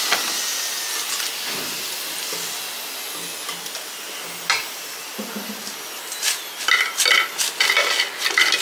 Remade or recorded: recorded